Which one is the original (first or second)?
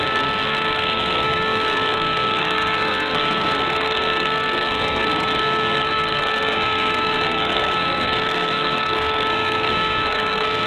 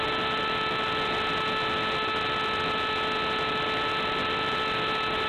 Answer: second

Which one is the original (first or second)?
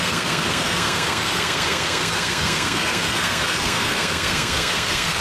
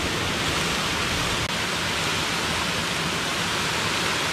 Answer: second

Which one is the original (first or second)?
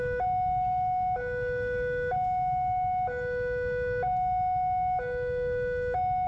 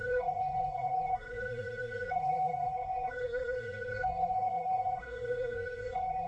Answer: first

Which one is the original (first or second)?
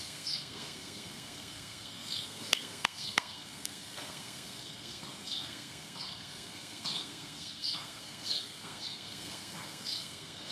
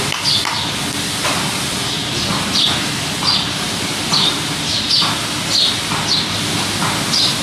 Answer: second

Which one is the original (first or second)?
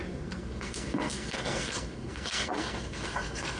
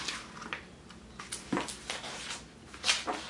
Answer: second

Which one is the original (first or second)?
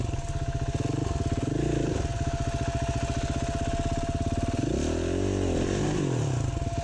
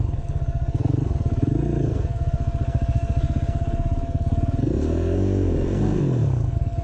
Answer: first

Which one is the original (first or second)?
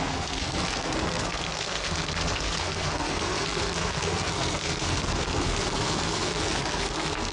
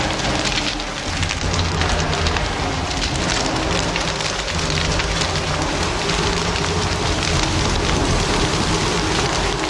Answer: second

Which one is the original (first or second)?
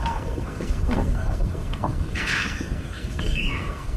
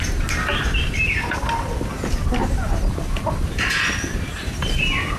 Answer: second